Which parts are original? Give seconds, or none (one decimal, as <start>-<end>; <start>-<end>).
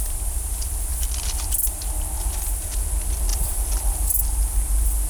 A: 0.0-3.3; 4.2-5.1